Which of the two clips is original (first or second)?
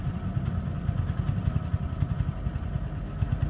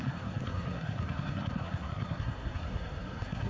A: first